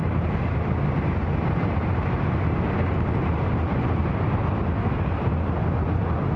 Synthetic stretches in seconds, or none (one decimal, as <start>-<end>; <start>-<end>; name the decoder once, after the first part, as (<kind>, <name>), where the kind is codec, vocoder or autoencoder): none